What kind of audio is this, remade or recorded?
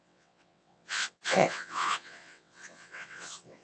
remade